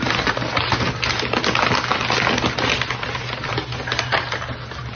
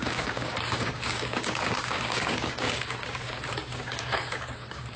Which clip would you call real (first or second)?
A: first